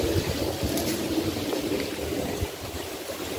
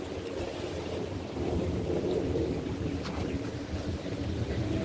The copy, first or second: first